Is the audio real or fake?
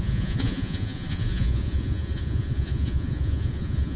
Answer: fake